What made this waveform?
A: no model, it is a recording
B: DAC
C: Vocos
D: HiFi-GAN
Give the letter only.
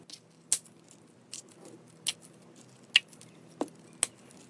A